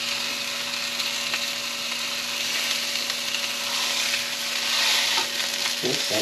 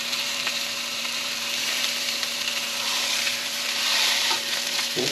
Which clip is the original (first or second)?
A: first